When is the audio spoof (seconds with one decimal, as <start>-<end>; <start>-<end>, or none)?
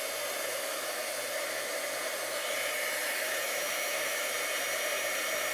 0.5-1.0; 3.0-4.3